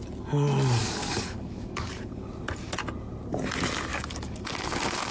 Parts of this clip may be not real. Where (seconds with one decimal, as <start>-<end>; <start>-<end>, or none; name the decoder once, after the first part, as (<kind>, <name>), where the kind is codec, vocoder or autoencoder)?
0.8-1.9 (codec, DAC); 3.9-5.1